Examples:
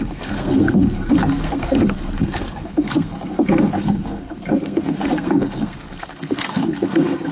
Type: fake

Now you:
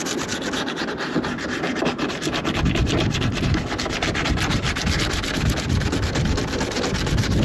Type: real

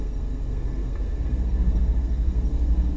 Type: fake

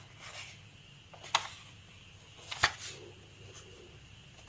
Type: real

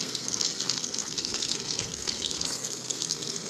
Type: fake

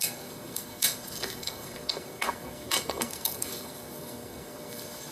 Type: fake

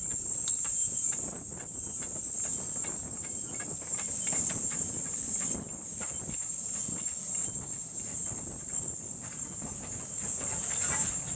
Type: real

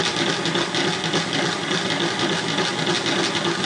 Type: real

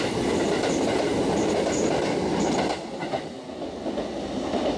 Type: real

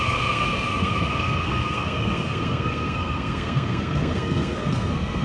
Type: fake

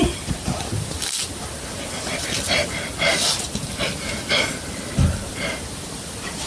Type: real